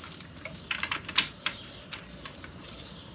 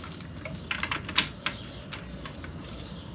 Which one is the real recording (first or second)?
second